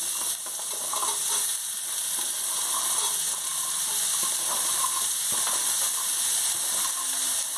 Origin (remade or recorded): recorded